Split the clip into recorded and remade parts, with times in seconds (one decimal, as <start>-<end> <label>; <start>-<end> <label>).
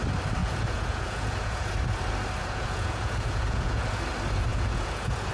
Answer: 0.0-0.4 recorded; 0.4-1.7 remade; 1.7-2.4 recorded; 2.4-4.0 remade; 4.0-4.5 recorded; 4.5-5.3 remade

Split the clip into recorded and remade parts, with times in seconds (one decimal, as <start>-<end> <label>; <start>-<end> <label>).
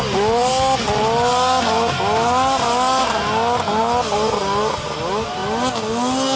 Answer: 0.0-6.4 recorded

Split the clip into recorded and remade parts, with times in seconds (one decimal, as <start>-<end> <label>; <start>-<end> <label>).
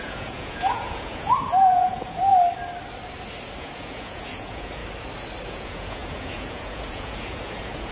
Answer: 0.0-2.3 remade; 2.3-3.6 recorded; 3.6-4.8 remade; 4.8-5.5 recorded; 5.5-7.9 remade